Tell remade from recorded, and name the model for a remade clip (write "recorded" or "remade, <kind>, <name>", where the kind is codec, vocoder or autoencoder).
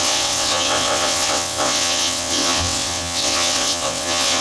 remade, vocoder, WaveNeXt